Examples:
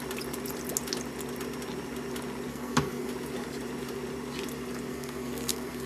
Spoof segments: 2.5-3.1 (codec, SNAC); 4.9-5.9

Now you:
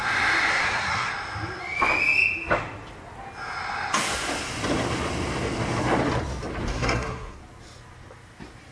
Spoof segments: 0.5-1.1 (codec, SNAC); 6.7-7.4

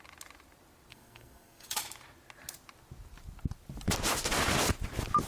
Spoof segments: 0.9-1.8 (codec, SNAC)

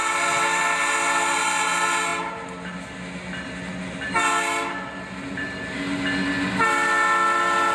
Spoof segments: none

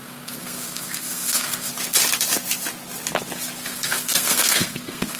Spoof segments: 0.0-1.7 (codec, SNAC); 3.6-5.2

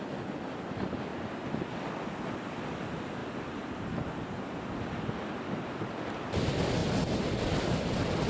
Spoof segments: none